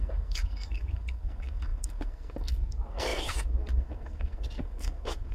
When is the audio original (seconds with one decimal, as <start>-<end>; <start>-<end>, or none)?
none